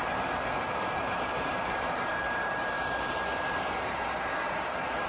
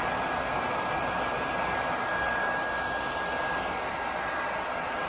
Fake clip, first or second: first